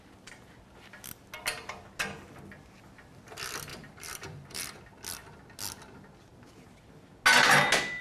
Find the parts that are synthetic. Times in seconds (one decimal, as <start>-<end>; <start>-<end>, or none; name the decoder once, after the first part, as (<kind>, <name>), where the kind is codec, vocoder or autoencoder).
3.7-4.8 (vocoder, BigVGAN v2)